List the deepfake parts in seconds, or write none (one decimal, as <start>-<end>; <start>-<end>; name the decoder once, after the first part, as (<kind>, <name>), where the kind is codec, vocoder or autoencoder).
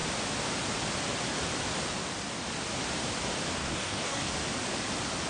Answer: 3.6-4.3 (codec, DAC)